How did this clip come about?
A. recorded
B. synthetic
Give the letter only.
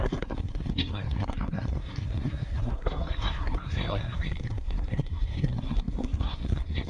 B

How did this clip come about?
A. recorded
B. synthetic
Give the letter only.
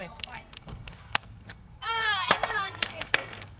B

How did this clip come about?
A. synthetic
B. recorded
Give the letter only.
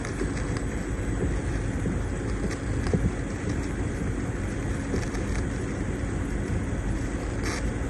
B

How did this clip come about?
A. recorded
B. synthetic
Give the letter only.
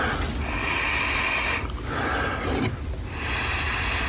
A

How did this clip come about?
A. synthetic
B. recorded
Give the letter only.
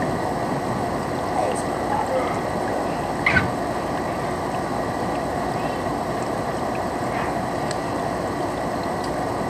B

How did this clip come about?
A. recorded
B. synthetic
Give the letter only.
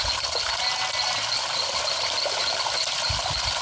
A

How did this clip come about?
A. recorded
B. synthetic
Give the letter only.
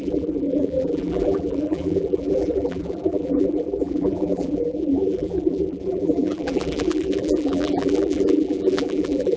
B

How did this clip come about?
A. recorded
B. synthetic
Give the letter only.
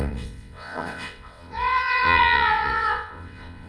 B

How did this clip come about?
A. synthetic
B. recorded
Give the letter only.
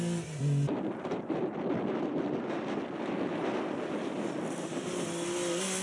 B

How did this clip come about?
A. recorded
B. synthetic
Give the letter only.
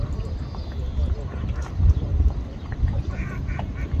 A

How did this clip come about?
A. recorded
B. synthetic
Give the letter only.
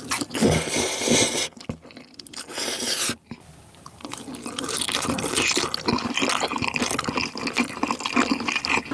A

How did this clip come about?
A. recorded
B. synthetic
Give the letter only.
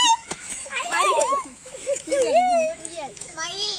B